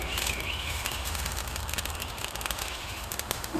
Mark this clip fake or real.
fake